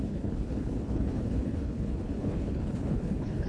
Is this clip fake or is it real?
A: fake